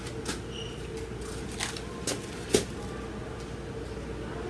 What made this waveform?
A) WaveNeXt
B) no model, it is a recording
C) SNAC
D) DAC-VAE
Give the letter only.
B